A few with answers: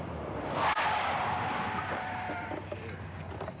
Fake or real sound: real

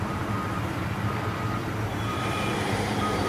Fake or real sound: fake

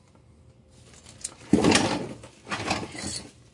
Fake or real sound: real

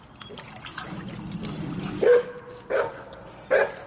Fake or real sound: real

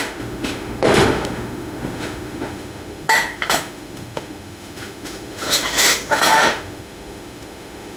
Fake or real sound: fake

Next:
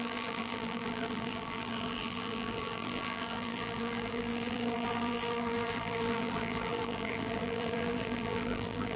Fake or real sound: fake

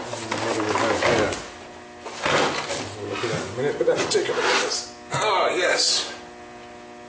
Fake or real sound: real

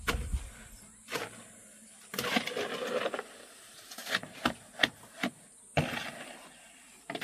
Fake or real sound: real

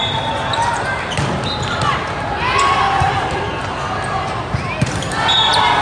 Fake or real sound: real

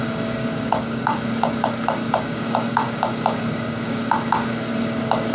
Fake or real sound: fake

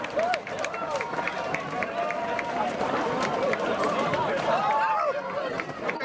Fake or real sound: real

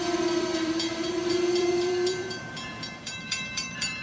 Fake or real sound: fake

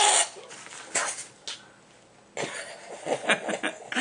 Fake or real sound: real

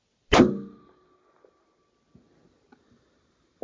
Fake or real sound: real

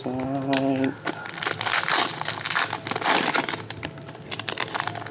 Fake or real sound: real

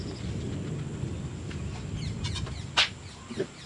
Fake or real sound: real